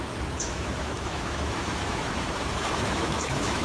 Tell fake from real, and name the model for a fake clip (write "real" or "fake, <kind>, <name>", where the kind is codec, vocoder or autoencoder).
fake, autoencoder, DAC-VAE